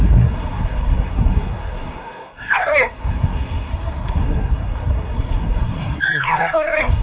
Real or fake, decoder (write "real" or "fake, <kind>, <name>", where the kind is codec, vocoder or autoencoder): fake, codec, SNAC